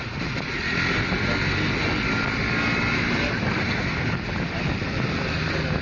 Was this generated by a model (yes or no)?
no